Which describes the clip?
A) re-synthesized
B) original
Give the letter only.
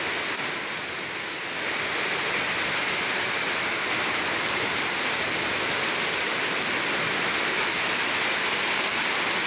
B